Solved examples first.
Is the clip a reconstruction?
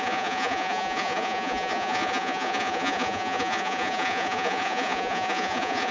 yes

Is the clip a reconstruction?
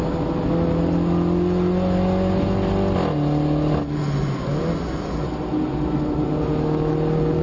no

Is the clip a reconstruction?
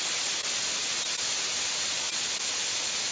no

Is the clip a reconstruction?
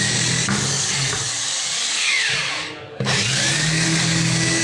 yes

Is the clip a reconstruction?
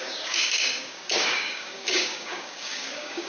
yes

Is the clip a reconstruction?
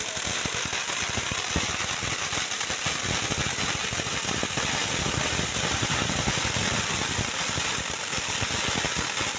no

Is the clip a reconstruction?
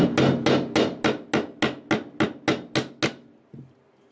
no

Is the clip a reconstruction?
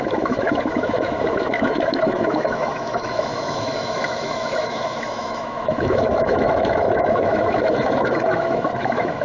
yes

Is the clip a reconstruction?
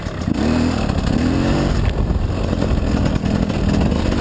no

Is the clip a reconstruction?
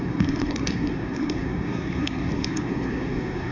yes